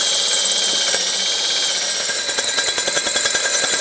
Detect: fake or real real